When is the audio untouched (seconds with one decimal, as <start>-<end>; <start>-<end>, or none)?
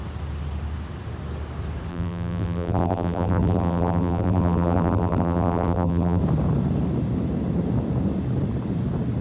0.0-1.9; 6.2-9.2